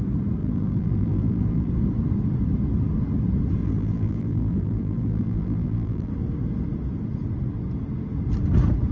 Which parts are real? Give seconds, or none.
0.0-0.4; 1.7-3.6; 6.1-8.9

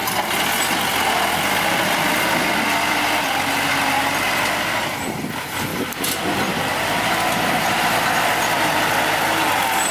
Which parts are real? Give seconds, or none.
0.0-9.9

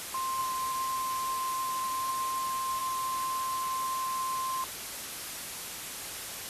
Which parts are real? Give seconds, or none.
0.0-0.4; 2.1-6.5

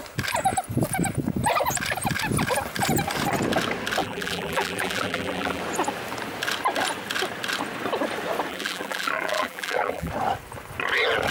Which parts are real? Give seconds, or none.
0.0-4.0; 5.6-8.5; 10.1-11.3

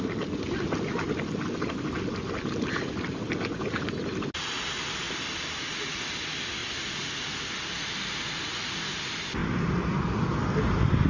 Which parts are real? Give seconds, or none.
0.0-11.1